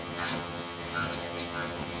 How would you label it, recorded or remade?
remade